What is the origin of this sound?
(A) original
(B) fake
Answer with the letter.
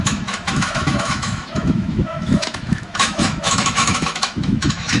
B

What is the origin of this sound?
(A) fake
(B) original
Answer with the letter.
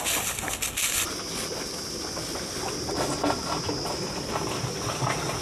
B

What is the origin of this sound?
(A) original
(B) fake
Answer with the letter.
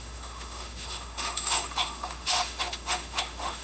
B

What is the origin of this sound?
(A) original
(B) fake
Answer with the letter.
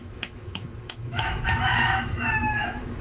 B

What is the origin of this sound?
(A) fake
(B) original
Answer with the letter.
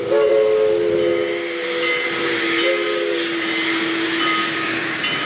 B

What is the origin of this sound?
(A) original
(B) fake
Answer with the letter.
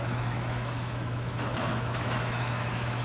B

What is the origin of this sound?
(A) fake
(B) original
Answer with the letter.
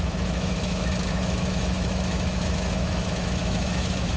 A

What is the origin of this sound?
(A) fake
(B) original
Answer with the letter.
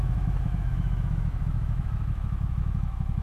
A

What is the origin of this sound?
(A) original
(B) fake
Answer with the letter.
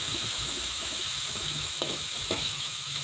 B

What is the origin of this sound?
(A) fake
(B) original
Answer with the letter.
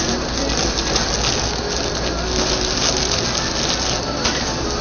B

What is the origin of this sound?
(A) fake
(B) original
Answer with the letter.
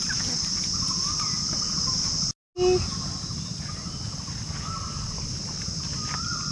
B